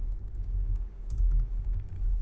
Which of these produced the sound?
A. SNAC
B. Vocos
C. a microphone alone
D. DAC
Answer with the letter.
D